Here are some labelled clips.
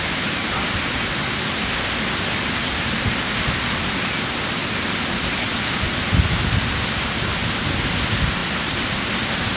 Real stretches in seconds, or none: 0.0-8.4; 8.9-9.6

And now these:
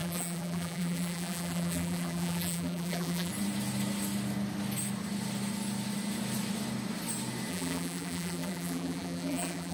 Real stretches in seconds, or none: 3.3-7.5

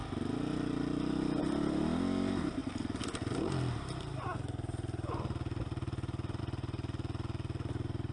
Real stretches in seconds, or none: 0.0-8.1

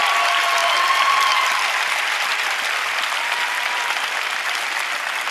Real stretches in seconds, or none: 0.0-0.6; 3.7-5.3

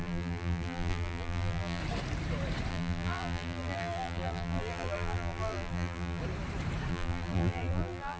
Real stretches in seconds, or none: 1.8-2.7; 6.2-6.9

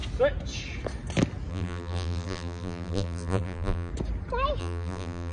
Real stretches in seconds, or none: 0.0-1.5; 3.9-4.6

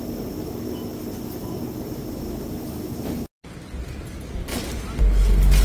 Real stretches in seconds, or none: 0.0-5.6

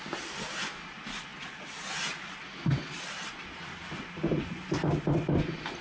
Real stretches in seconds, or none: 1.3-2.9